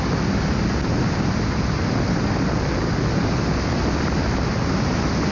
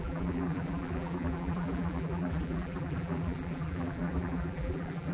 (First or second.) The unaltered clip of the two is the first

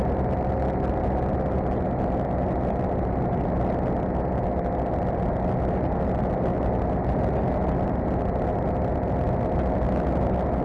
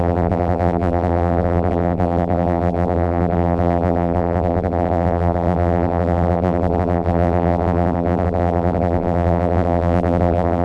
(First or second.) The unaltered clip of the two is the first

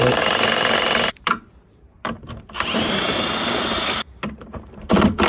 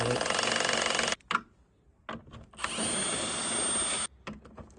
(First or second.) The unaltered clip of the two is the second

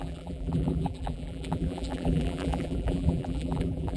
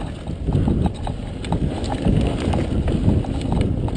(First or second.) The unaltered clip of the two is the second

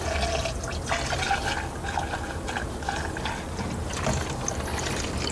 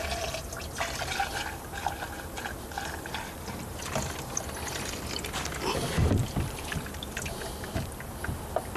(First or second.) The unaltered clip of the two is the first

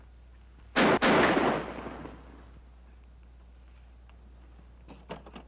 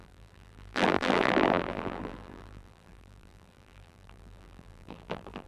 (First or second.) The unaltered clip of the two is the first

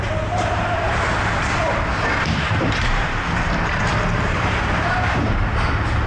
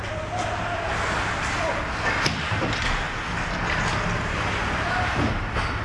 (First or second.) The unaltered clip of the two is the second